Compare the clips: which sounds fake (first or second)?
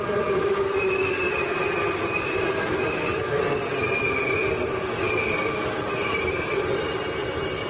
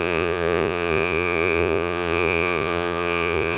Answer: second